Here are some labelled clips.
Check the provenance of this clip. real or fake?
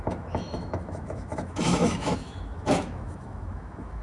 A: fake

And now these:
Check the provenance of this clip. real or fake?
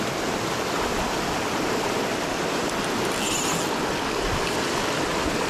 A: real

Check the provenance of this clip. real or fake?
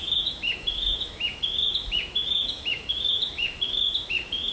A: fake